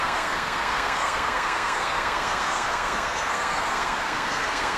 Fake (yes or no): yes